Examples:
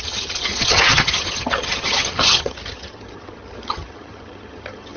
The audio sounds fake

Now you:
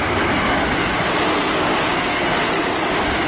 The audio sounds real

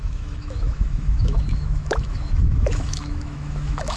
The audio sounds fake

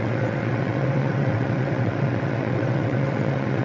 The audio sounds fake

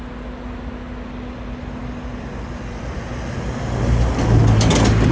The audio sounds real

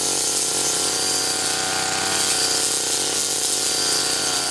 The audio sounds real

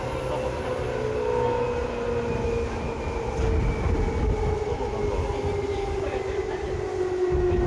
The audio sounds real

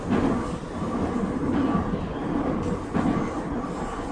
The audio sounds real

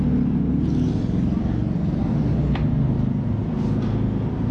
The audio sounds real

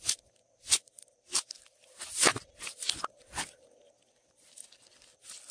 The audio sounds real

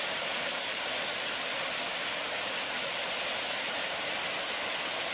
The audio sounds real